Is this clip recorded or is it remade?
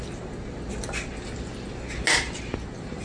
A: recorded